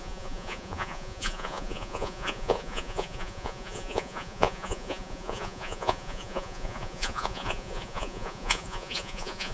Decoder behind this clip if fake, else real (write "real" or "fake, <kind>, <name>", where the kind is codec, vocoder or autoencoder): fake, vocoder, Vocos